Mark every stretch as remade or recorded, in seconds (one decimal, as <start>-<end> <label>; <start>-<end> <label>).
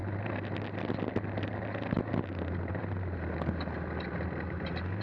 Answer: 0.0-5.0 recorded